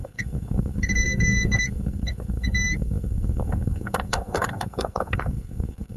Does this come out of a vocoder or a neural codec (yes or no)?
yes